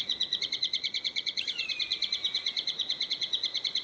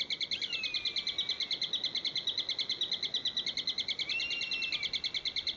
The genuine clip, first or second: second